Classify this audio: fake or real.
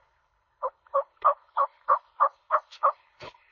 fake